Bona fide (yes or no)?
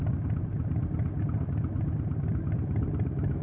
yes